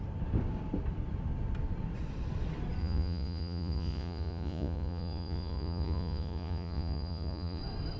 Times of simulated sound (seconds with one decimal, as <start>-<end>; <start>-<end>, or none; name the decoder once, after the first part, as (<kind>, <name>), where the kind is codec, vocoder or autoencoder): 2.8-7.6 (vocoder, Vocos)